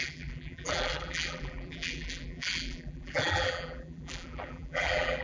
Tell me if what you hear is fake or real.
fake